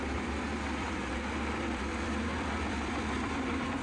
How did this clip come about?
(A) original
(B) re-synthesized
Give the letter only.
B